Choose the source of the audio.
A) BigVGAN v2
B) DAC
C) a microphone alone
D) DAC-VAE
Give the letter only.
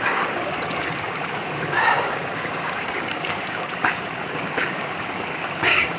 B